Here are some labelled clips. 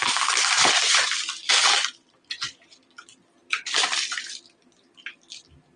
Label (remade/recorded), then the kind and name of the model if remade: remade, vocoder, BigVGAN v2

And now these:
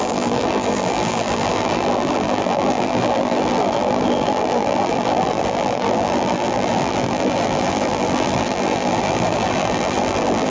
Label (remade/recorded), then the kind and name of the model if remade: remade, vocoder, BigVGAN v2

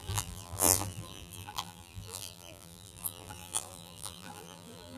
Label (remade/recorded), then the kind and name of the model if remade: remade, vocoder, BigVGAN v2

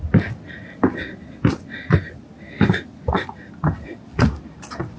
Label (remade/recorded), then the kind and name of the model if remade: recorded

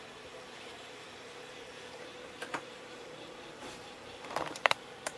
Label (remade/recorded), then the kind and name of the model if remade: remade, vocoder, BigVGAN v2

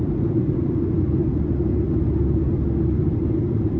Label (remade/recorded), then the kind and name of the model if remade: remade, vocoder, BigVGAN v2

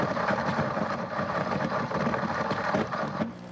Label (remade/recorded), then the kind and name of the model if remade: remade, vocoder, BigVGAN v2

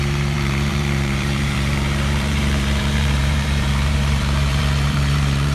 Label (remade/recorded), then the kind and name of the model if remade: remade, vocoder, BigVGAN v2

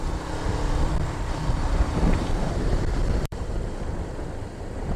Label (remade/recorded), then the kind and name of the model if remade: remade, vocoder, BigVGAN v2